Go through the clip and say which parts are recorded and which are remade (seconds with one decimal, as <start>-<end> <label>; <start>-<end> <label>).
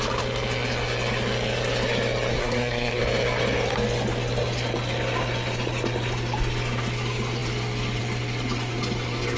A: 0.0-2.3 recorded; 2.3-3.0 remade; 3.0-9.4 recorded